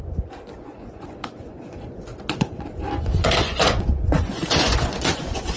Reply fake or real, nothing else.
fake